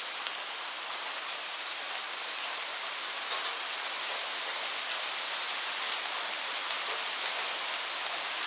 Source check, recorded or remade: recorded